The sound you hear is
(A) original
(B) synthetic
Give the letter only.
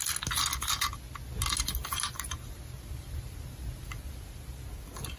A